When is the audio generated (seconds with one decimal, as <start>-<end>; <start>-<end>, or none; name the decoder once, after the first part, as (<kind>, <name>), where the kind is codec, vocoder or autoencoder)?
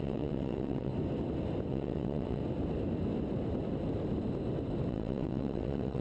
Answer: 0.0-0.9 (vocoder, WaveNeXt); 1.7-2.4; 4.9-6.0